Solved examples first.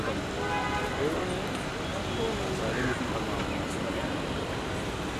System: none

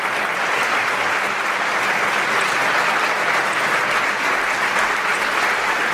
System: none